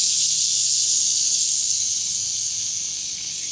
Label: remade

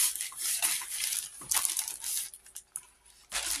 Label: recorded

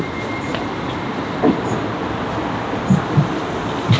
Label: recorded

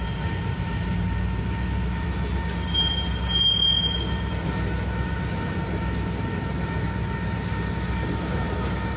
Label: recorded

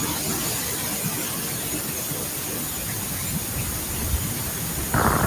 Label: recorded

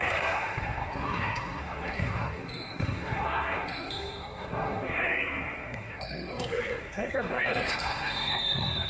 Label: remade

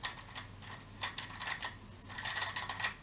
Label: recorded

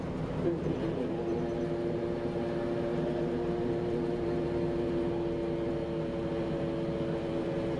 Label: recorded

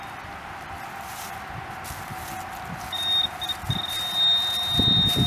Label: recorded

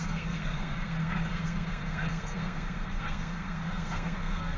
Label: remade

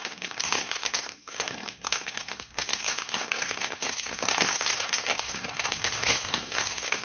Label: remade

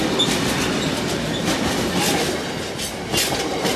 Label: recorded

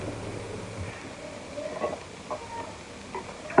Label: recorded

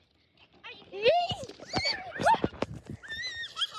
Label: recorded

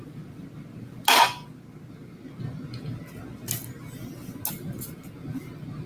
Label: recorded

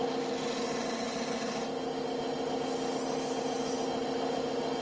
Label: recorded